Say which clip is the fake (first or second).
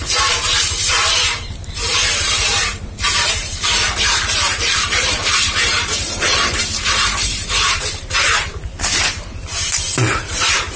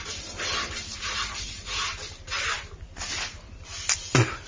first